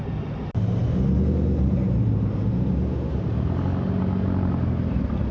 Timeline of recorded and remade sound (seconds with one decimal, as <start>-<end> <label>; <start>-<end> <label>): 0.0-5.3 recorded